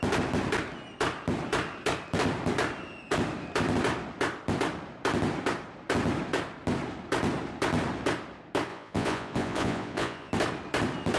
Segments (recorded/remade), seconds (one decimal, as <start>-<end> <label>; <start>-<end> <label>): 0.0-8.7 recorded; 8.7-10.3 remade; 10.3-11.2 recorded